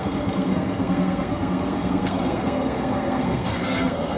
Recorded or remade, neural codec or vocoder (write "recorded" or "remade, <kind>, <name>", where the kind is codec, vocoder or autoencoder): remade, codec, SNAC